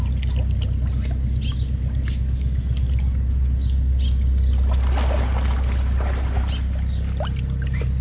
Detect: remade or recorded recorded